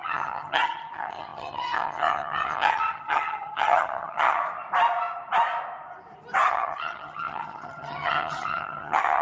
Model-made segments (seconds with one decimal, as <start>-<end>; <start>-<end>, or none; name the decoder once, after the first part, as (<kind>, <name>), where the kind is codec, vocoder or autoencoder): 0.0-4.4 (vocoder, HiFi-GAN); 6.5-9.2